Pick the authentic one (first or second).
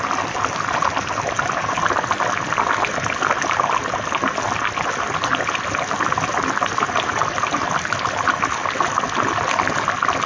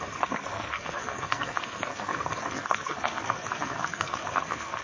first